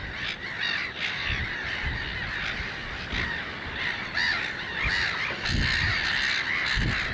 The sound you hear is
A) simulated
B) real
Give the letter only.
B